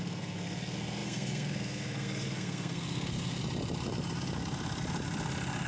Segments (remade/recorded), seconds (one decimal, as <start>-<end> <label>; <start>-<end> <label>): 0.0-3.4 remade; 3.4-5.7 recorded